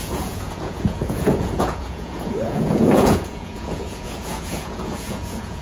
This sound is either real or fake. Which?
fake